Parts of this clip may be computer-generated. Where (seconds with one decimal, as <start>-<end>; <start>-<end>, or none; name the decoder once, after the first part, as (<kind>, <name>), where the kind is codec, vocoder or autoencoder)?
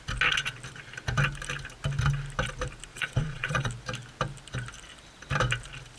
2.9-3.7 (vocoder, Vocos)